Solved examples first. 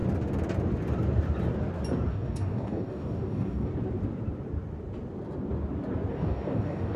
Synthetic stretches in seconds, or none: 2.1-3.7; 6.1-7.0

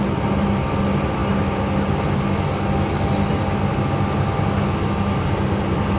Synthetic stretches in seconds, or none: none

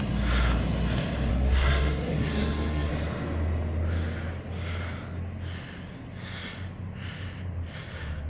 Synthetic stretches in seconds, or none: 1.3-2.9

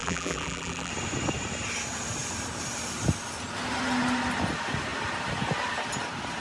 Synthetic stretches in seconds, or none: 0.0-0.9

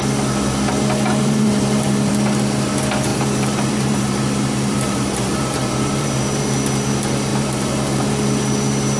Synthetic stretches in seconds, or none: 1.2-2.1; 3.1-6.4; 7.3-8.1